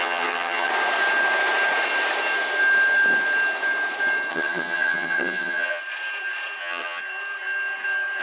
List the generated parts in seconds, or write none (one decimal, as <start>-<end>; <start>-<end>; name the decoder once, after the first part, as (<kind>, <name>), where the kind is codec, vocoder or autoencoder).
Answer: 0.0-0.7 (vocoder, HiFi-GAN); 4.3-5.8; 6.6-7.0